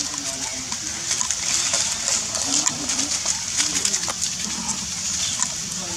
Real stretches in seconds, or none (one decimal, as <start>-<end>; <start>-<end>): 0.0-6.0